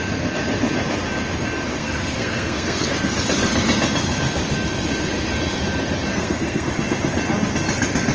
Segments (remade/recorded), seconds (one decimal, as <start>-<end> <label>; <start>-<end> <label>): 0.0-1.8 recorded; 1.8-2.9 remade; 2.9-6.1 recorded; 6.1-6.7 remade; 6.7-8.1 recorded